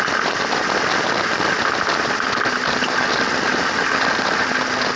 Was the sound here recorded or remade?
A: recorded